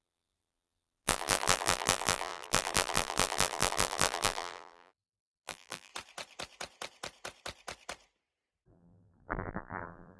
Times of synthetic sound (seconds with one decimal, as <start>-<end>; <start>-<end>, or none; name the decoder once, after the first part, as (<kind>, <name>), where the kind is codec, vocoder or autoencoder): 0.0-5.9 (vocoder, BigVGAN v2); 8.7-10.2

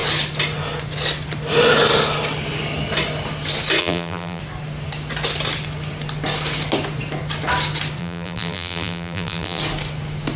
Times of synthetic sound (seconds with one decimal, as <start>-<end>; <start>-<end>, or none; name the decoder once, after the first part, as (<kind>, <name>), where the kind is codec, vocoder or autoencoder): 3.8-4.4 (vocoder, BigVGAN v2); 8.0-9.6

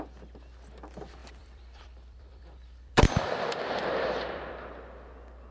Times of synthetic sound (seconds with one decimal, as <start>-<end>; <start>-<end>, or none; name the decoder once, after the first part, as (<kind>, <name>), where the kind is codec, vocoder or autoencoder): 1.2-4.5 (vocoder, BigVGAN v2)

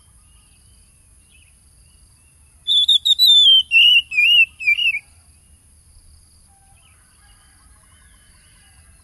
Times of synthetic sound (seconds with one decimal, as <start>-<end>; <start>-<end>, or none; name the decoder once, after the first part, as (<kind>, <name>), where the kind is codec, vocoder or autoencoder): none

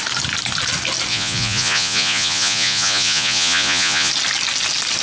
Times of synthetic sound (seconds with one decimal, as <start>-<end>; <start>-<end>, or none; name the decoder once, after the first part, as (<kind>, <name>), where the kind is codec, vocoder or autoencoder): 1.1-4.1 (vocoder, Vocos)

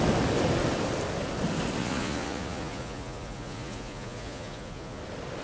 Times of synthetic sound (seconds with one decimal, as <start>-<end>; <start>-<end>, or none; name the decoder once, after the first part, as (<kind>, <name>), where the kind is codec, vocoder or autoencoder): 1.8-5.0 (vocoder, Vocos)

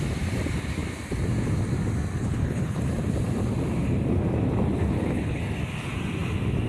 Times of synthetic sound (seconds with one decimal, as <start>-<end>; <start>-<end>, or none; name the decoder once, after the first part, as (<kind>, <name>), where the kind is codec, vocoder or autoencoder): 2.2-2.8 (codec, HILCodec); 4.9-5.4

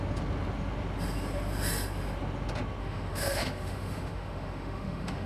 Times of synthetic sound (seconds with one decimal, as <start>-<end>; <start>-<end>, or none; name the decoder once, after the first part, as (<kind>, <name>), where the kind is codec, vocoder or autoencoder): 2.8-5.3 (autoencoder, DAC-VAE)